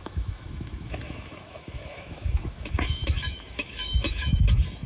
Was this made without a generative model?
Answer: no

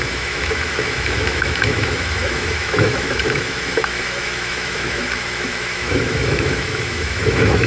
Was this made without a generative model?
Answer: no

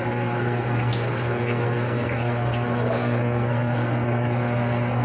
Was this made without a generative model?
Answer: no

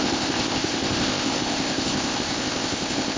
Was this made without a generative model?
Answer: no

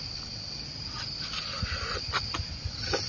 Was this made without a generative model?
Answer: yes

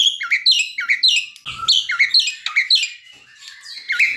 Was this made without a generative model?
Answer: yes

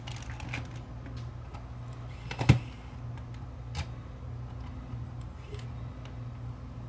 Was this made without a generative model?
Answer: yes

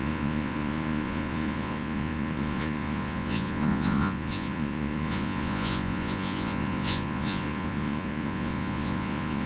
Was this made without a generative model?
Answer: no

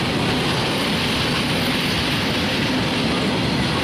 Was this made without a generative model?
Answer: yes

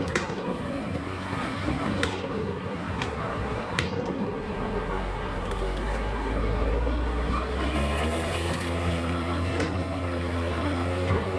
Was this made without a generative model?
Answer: no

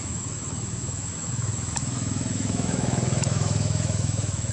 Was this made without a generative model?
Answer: no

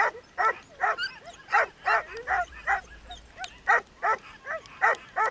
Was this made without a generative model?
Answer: yes